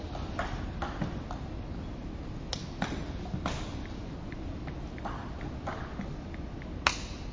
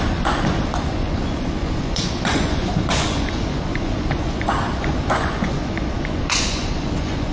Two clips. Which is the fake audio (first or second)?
second